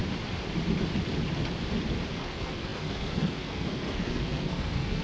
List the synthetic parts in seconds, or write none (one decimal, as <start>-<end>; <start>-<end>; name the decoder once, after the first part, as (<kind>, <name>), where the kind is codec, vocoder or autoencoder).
2.1-5.0 (codec, SNAC)

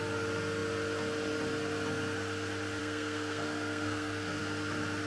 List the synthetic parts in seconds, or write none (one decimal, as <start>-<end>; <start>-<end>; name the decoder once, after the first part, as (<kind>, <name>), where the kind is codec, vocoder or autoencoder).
2.8-4.4 (codec, SNAC)

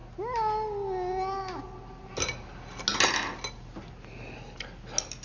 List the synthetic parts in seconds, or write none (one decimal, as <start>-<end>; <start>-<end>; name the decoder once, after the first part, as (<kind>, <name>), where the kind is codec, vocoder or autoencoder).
none

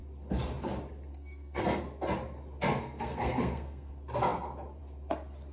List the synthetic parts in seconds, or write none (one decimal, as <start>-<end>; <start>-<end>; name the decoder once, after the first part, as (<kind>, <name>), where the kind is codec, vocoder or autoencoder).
1.1-1.8 (codec, SNAC); 2.8-3.9

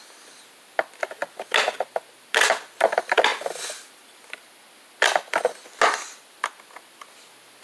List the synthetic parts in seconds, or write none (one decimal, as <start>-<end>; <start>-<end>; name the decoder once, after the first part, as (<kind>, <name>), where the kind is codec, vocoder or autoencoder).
none